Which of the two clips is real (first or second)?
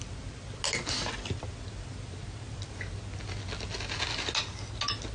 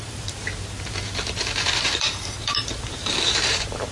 first